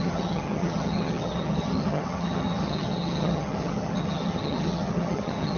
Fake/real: fake